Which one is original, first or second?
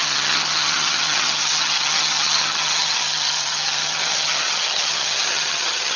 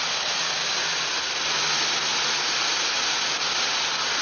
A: second